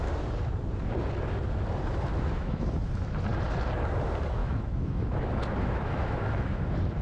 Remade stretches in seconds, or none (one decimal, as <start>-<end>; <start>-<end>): 2.1-2.7; 4.4-6.6